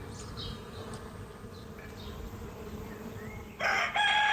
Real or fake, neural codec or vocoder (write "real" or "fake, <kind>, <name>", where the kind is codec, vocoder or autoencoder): real